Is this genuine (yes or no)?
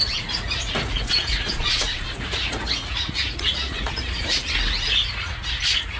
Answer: no